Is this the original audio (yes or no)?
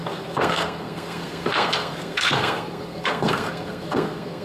no